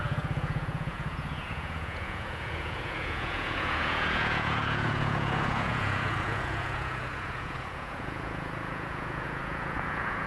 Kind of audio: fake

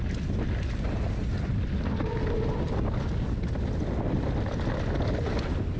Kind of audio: real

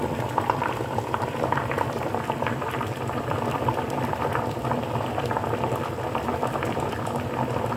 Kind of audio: fake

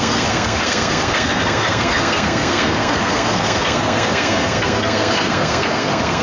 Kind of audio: fake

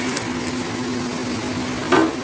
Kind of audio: real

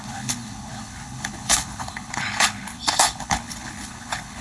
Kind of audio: fake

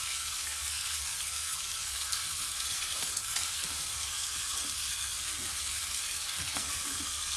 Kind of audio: fake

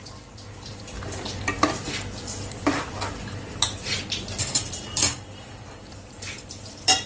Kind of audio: fake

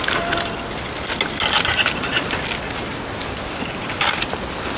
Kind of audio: real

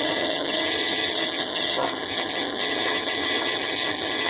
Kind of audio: fake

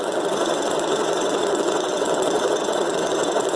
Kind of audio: fake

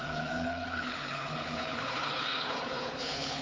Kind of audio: fake